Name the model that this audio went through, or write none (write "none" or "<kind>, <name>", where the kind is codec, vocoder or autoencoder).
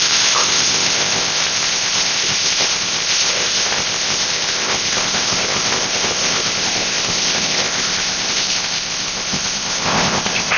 codec, ZipCodec